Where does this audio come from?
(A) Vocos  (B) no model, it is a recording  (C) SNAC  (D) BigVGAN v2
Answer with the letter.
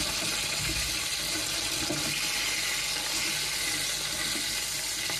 B